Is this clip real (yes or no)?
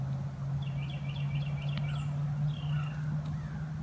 yes